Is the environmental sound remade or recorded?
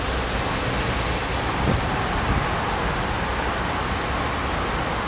recorded